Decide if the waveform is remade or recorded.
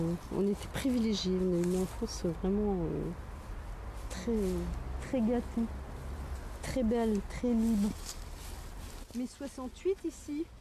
recorded